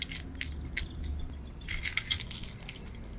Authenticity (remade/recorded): recorded